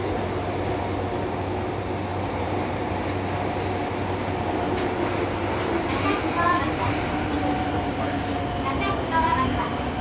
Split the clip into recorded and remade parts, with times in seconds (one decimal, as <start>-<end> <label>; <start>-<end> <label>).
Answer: 0.0-2.1 recorded; 2.1-2.9 remade; 2.9-10.0 recorded